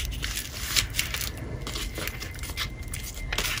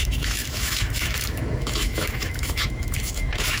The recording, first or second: first